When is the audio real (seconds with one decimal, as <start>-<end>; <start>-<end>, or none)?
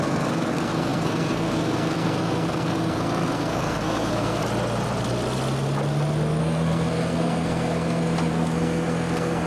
4.4-6.4